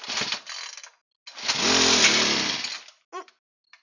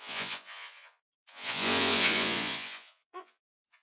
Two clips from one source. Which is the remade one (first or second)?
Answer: second